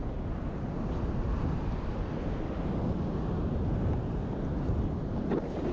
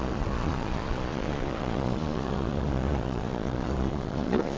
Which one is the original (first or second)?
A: first